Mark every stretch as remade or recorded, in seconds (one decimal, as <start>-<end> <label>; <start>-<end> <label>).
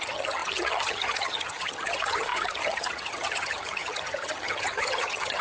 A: 0.0-5.4 remade